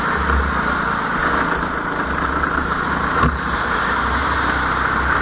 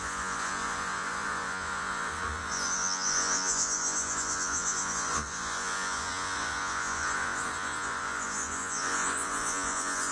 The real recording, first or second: first